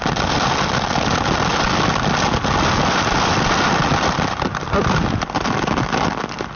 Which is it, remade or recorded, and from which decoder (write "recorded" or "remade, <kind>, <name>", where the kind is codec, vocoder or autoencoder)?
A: recorded